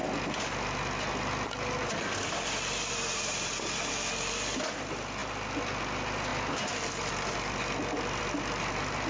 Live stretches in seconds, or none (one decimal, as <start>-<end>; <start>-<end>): 0.0-9.1